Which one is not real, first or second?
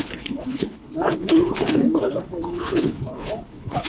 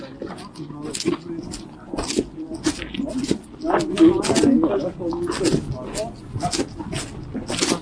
first